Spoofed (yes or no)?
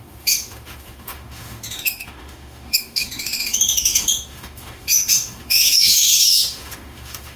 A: yes